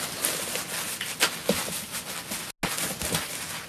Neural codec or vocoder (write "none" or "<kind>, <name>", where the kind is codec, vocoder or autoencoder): none